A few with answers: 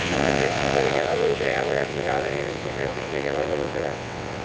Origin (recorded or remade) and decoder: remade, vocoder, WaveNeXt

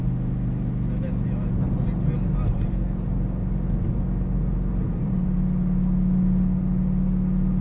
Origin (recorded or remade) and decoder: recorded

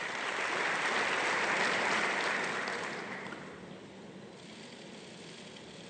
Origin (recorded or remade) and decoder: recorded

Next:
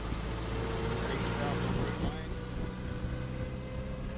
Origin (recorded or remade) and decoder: recorded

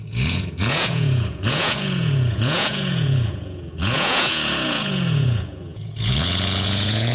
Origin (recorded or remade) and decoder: remade, vocoder, Vocos